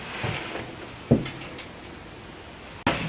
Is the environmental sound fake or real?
real